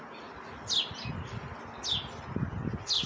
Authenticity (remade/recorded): recorded